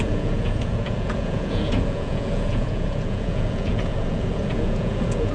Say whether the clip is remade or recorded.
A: remade